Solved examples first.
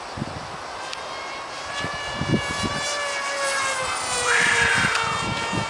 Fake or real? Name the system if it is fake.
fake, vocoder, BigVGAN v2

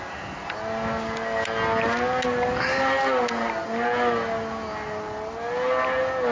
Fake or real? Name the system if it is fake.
real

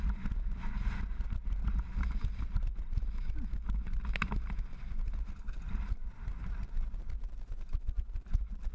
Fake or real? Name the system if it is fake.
real